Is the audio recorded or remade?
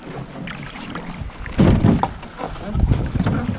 recorded